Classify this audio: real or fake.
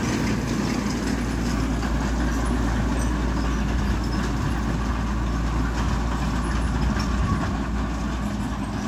real